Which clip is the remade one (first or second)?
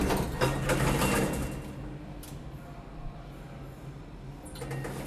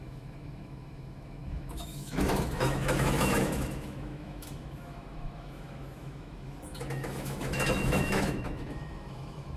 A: second